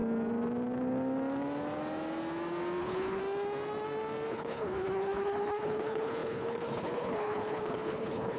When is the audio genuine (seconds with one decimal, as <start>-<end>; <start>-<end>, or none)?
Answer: 0.0-2.8; 3.2-4.3